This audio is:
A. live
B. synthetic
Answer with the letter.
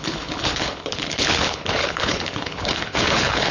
B